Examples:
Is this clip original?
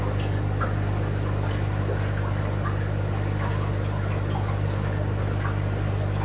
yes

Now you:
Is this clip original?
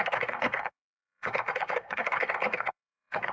no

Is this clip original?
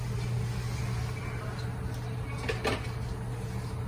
yes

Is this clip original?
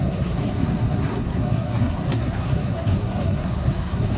no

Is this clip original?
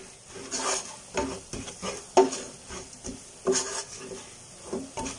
yes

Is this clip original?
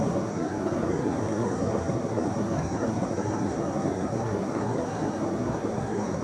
no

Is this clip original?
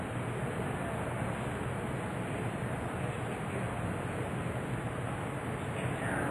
yes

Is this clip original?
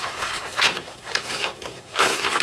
no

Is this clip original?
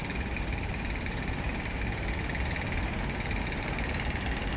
yes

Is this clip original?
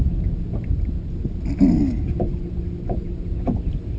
yes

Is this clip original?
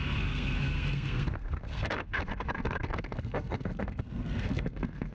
no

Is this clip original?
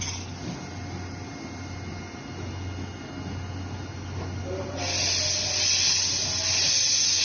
yes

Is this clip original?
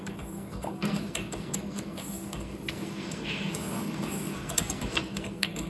no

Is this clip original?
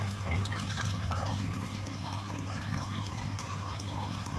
no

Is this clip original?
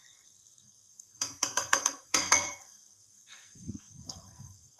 no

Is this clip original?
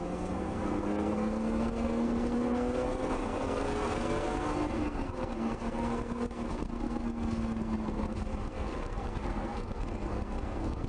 no